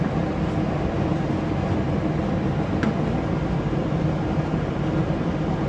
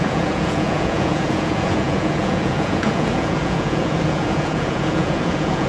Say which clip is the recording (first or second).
first